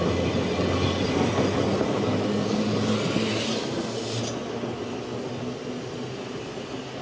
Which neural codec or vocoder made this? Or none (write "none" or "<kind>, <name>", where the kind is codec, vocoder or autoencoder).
none